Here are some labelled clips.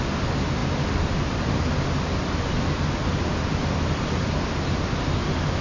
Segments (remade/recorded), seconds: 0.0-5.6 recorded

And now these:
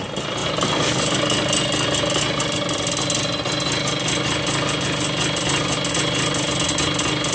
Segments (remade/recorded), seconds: 0.0-7.3 recorded

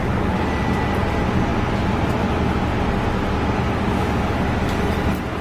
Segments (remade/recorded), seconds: 0.0-5.4 recorded

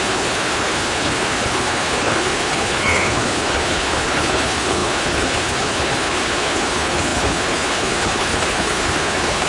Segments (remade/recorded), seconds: 0.0-9.5 remade